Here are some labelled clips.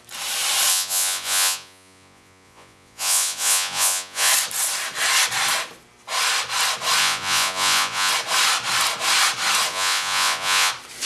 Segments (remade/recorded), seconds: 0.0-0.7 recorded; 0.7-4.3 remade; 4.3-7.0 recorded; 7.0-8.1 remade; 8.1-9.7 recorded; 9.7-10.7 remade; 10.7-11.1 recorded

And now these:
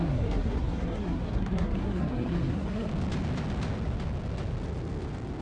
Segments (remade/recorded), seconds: 0.0-2.9 remade; 2.9-5.4 recorded

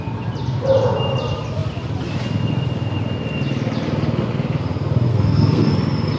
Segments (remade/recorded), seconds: 0.0-5.1 recorded; 5.1-5.7 remade; 5.7-6.2 recorded

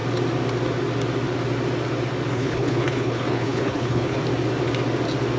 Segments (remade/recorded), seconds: 0.0-2.3 recorded; 2.3-4.2 remade; 4.2-5.4 recorded

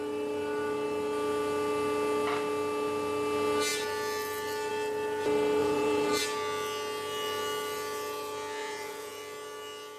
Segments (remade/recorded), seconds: 0.0-5.6 recorded; 5.6-6.2 remade; 6.2-8.6 recorded; 8.6-9.2 remade; 9.2-10.0 recorded